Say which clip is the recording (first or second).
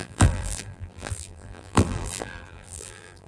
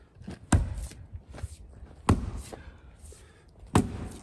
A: second